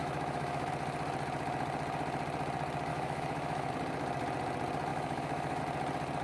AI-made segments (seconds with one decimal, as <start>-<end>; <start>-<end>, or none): 0.0-0.7; 2.9-3.7; 4.9-5.6